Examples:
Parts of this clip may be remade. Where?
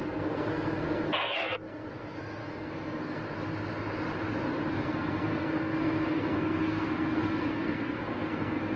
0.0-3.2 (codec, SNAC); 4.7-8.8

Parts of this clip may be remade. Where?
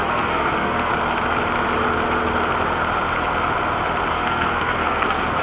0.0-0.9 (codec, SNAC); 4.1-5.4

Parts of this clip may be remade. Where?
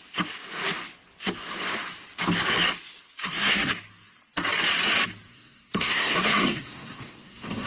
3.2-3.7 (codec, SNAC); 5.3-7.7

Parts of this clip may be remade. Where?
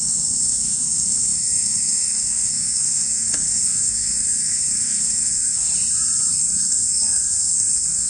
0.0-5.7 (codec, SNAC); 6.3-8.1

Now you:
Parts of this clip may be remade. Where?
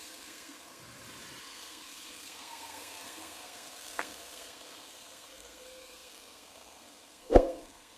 0.0-0.8 (codec, SNAC); 1.4-8.0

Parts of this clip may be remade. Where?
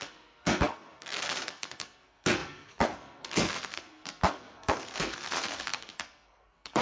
0.0-6.8 (codec, SNAC)